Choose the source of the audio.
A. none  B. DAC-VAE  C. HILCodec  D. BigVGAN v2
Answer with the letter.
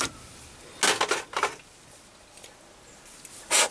A